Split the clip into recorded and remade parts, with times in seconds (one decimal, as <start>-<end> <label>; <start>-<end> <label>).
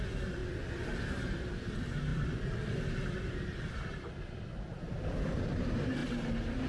0.0-0.4 recorded; 0.4-1.5 remade; 1.5-2.1 recorded; 2.1-5.4 remade; 5.4-6.7 recorded